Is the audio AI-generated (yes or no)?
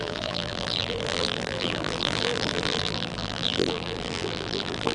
yes